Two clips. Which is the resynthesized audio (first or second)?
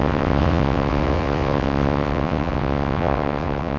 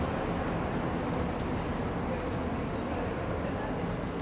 first